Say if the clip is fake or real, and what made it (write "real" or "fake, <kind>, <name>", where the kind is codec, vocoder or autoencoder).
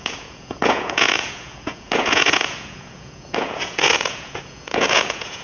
fake, vocoder, Vocos